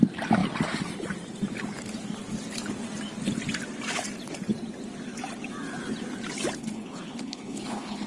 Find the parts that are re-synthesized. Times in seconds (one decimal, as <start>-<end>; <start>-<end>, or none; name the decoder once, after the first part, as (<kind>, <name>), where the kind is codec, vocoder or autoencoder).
6.6-8.1 (codec, HILCodec)